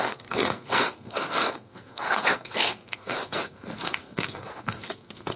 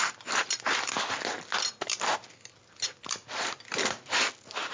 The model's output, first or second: first